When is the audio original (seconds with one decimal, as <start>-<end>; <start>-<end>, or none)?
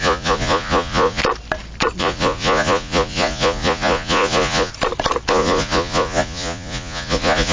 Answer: 1.2-2.0; 4.7-5.3